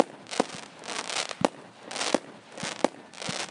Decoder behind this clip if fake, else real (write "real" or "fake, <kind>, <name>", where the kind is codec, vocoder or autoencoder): real